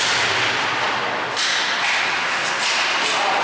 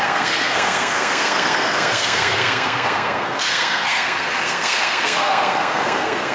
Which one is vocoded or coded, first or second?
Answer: second